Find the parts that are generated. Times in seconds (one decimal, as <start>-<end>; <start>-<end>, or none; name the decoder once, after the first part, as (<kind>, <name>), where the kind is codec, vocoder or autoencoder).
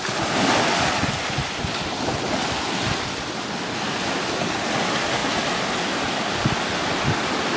none